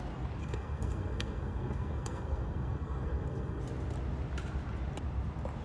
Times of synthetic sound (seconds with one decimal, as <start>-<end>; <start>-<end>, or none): 0.4-3.6